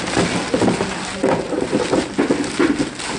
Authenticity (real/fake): real